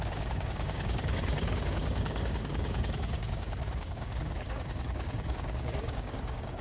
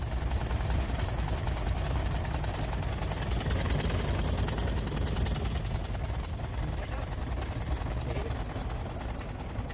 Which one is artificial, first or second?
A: first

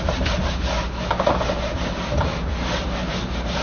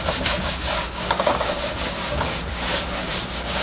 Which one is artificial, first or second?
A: second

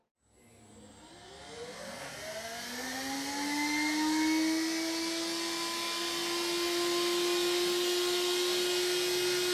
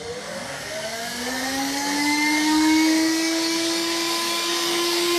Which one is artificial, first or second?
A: second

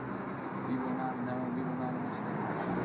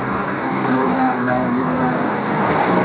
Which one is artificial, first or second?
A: second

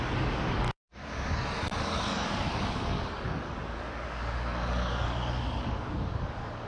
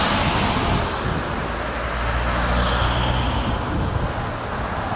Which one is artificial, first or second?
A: first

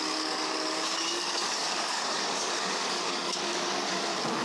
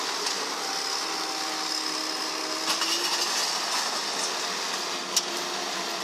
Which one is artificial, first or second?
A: first